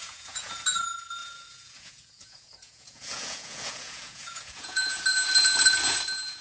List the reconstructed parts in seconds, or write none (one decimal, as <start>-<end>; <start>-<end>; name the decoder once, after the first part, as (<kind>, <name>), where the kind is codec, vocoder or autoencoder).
0.0-0.6 (vocoder, Vocos); 1.2-5.0